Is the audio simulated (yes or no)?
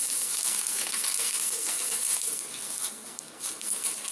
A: yes